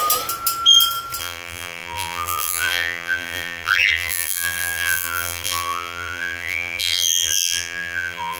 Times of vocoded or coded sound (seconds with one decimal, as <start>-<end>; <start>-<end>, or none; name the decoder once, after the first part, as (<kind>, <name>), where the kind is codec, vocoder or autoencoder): 1.2-8.4 (vocoder, BigVGAN v2)

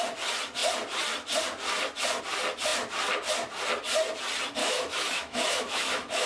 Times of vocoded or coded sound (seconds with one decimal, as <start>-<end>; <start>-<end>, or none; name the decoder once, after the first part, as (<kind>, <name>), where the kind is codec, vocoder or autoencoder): 4.6-6.3 (autoencoder, DAC-VAE)

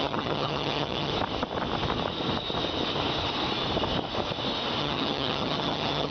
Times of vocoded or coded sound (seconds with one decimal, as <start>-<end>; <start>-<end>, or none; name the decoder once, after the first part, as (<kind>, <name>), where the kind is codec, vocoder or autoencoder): 0.0-1.1 (vocoder, HiFi-GAN); 4.8-6.1

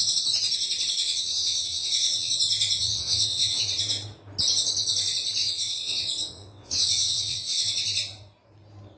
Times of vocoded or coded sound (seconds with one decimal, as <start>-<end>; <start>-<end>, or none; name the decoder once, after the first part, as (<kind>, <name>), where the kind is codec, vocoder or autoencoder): 1.0-2.3 (vocoder, WaveNeXt); 2.8-3.6; 5.4-7.7